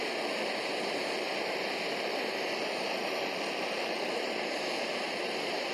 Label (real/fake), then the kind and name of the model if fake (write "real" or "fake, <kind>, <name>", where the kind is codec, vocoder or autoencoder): fake, vocoder, BigVGAN v2